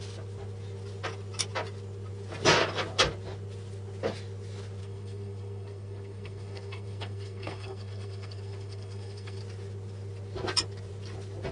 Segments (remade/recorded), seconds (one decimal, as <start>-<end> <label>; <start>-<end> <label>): 0.0-4.8 recorded; 4.8-9.4 remade; 9.4-11.5 recorded